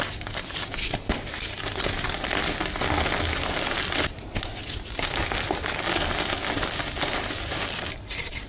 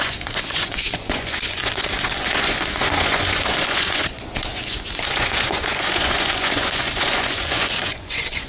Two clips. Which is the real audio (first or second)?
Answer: first